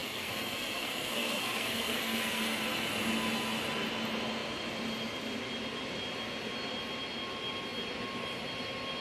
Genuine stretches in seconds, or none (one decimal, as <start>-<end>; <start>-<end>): 2.6-9.0